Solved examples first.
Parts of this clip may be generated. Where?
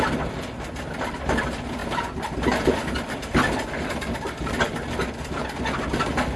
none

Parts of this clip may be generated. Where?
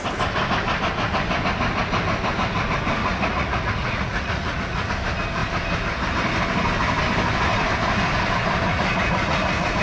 3.0-4.9 (vocoder, Vocos); 8.7-9.8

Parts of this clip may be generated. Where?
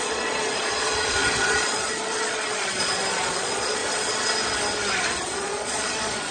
0.0-3.8 (vocoder, Vocos); 5.0-6.3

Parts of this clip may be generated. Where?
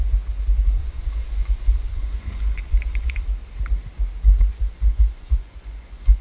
0.8-3.2 (vocoder, Vocos); 4.5-6.2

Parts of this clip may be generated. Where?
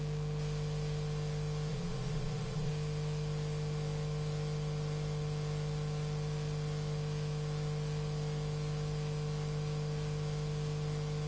1.7-2.7 (vocoder, Vocos)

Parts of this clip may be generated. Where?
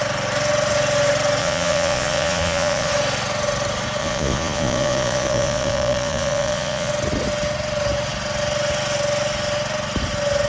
1.4-2.9 (vocoder, Vocos); 4.0-6.9